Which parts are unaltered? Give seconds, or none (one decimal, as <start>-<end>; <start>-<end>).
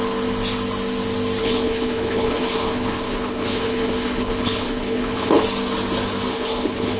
0.0-1.4; 5.4-6.3